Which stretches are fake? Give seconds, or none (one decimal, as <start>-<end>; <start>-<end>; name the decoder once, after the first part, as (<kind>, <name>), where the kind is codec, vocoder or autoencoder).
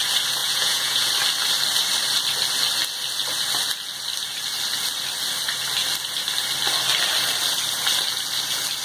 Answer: 0.4-1.1 (vocoder, Vocos)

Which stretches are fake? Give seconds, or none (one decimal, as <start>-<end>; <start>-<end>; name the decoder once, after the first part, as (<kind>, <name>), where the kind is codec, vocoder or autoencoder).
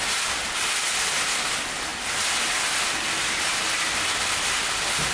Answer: none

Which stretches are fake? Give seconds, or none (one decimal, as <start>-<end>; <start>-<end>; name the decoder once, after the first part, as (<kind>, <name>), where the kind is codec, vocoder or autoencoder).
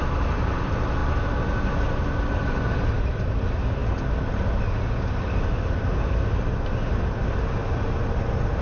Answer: none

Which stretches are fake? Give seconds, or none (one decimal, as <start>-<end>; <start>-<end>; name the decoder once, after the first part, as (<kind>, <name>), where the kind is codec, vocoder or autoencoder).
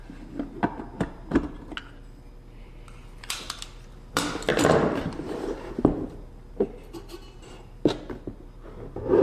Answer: 4.5-5.7 (vocoder, BigVGAN v2)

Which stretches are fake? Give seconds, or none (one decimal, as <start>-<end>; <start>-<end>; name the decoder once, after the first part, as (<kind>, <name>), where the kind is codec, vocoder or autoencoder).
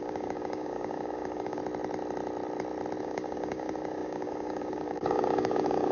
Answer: 0.0-1.6 (codec, DAC); 3.0-5.9